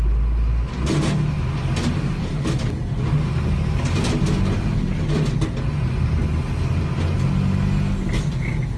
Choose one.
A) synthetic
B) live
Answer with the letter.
B